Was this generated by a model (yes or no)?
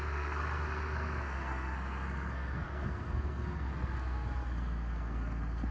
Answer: yes